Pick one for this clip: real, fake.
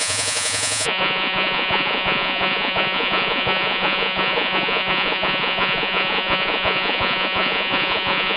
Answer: fake